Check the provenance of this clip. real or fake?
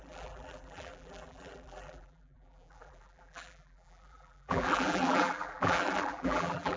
fake